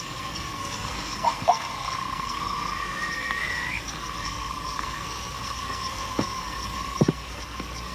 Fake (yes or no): yes